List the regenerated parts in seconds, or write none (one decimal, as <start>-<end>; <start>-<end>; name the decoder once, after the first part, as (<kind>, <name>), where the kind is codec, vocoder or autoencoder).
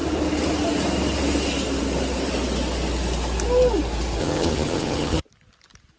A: 4.2-5.2 (vocoder, HiFi-GAN)